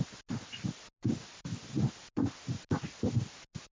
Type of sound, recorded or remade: recorded